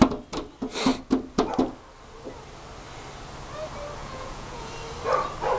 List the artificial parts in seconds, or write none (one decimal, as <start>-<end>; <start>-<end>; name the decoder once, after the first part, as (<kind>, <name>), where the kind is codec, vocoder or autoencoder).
4.0-4.7 (vocoder, Vocos)